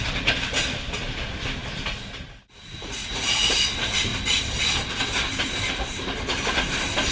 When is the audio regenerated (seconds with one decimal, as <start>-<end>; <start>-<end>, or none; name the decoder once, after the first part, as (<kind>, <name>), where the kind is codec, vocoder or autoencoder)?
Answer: 2.8-3.6 (vocoder, Vocos)